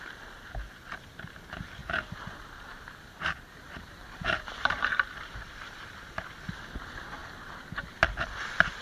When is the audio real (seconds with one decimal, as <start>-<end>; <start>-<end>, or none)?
0.0-1.8; 6.3-8.8